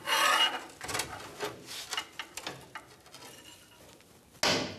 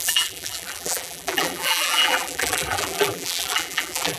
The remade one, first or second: second